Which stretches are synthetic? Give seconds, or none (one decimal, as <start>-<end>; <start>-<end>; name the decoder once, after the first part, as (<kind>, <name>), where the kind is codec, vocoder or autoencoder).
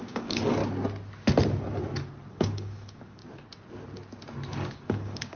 0.0-0.6 (codec, DAC); 2.3-3.2; 4.7-5.4